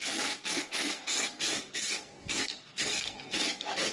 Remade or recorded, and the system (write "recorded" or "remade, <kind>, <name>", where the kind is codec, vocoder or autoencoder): remade, codec, SNAC